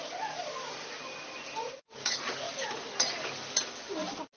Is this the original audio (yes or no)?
yes